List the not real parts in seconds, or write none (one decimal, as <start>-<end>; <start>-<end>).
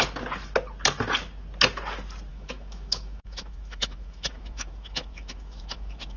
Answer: 2.3-6.2